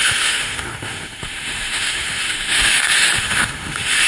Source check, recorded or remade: remade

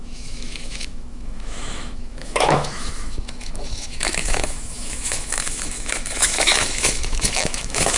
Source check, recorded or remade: remade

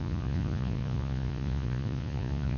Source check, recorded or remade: remade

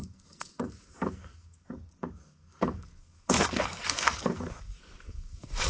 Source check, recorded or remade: remade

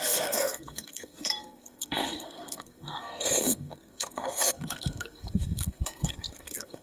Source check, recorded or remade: remade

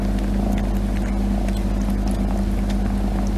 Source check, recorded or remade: recorded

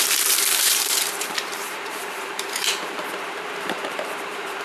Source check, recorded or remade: remade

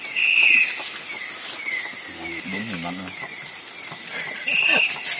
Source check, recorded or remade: recorded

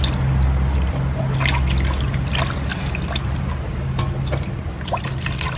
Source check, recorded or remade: recorded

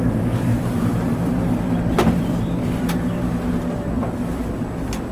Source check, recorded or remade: remade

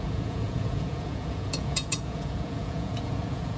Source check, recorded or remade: remade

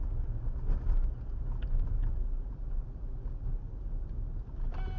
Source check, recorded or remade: recorded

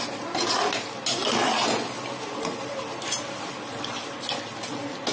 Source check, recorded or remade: recorded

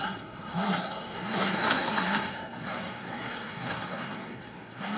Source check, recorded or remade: remade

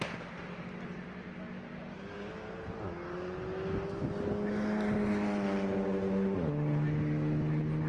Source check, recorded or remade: recorded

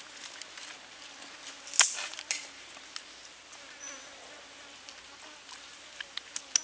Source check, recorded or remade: recorded